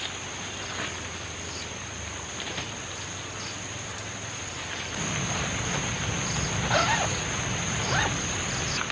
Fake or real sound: real